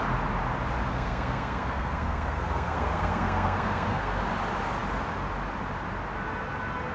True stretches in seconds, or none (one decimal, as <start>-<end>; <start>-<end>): 0.0-0.9; 4.2-6.9